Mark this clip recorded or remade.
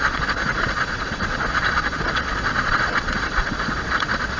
remade